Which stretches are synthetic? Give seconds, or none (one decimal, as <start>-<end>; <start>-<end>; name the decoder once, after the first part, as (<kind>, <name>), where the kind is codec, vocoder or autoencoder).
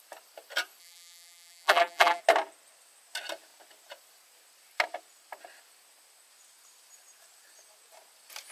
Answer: 0.8-2.2 (vocoder, BigVGAN v2)